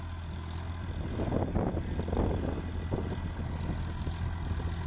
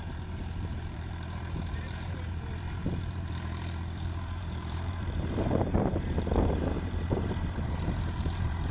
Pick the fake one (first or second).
second